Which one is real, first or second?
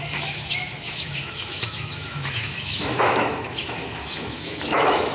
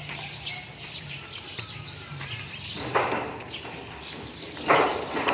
second